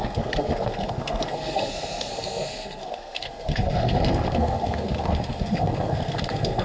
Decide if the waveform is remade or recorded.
remade